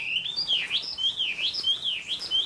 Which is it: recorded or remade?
recorded